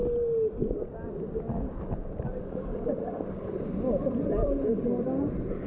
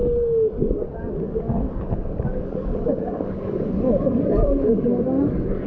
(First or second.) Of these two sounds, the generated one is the second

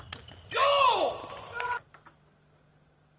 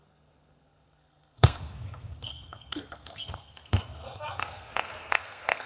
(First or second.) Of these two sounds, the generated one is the second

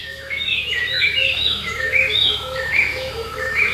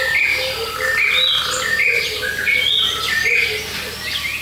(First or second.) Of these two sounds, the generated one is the first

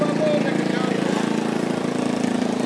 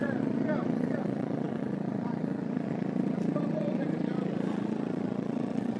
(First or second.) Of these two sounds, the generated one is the second